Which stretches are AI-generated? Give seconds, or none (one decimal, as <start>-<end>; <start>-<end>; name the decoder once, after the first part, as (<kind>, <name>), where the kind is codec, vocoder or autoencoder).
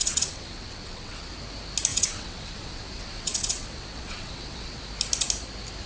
0.0-1.3 (vocoder, WaveNeXt); 1.9-4.8